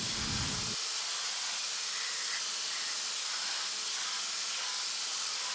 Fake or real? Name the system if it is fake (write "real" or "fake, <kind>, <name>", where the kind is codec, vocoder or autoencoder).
real